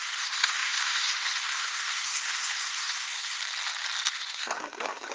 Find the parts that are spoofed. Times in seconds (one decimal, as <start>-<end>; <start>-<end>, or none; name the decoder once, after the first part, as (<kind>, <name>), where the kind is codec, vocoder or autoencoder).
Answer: 0.0-3.4 (codec, SNAC); 4.1-5.1